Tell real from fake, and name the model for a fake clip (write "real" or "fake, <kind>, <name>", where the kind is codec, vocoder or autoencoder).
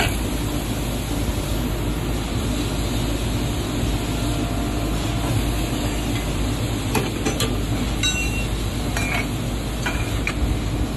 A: real